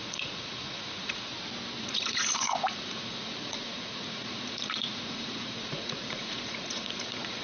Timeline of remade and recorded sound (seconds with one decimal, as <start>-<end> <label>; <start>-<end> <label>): 0.0-1.3 remade; 1.3-1.8 recorded; 1.8-7.4 remade